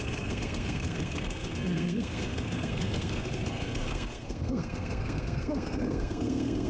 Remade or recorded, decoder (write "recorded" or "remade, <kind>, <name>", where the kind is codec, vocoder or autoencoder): remade, codec, SNAC